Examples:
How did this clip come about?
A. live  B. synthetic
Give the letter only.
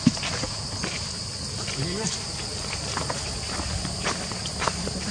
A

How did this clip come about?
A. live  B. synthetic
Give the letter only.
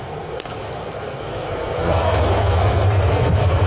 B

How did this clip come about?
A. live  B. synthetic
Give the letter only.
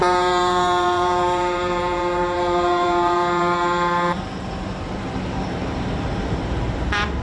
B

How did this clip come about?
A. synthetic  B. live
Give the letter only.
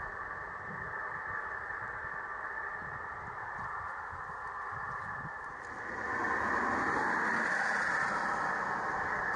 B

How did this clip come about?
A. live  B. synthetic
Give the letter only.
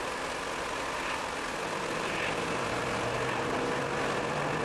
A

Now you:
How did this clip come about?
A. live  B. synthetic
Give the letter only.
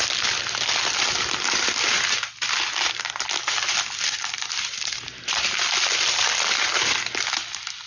A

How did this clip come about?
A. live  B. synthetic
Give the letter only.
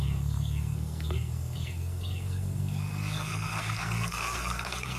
B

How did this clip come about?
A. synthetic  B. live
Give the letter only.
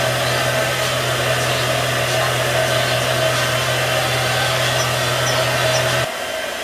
B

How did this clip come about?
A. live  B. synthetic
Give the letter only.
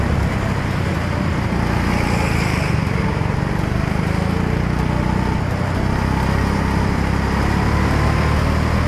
A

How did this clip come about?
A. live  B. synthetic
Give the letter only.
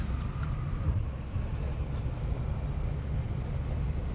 A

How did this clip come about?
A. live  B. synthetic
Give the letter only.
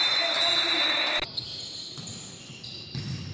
A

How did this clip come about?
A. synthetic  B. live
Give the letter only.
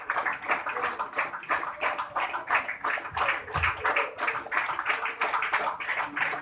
B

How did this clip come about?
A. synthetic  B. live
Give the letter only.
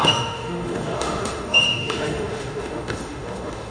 A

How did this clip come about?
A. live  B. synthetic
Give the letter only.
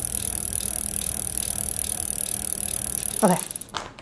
A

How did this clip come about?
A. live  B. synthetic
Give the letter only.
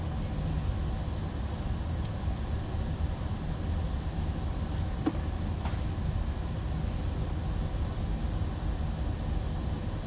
A